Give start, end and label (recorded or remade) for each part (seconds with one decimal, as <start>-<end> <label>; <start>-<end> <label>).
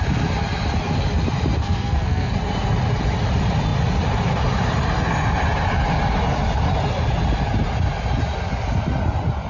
0.0-1.6 recorded; 1.6-2.3 remade; 2.3-9.5 recorded